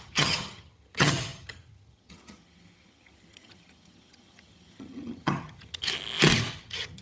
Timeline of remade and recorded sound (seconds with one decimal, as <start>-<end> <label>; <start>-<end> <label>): 0.0-5.9 remade; 5.9-6.5 recorded; 6.5-7.0 remade